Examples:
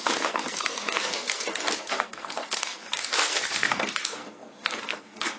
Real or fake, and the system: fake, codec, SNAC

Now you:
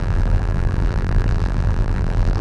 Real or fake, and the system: fake, vocoder, BigVGAN v2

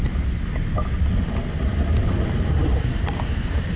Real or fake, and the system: real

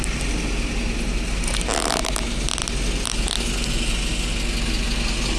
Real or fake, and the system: real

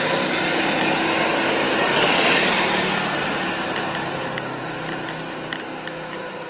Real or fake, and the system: real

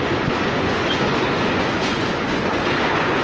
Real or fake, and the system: fake, vocoder, Vocos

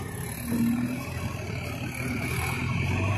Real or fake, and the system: real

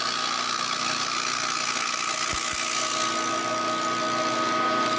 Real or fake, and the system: real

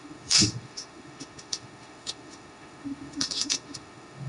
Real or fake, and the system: fake, autoencoder, DAC-VAE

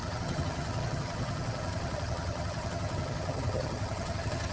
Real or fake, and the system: fake, vocoder, HiFi-GAN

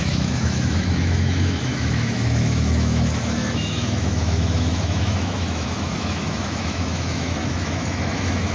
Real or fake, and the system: fake, autoencoder, DAC-VAE